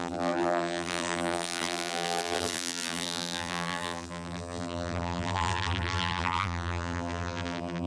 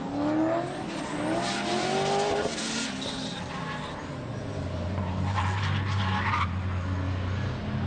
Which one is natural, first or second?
second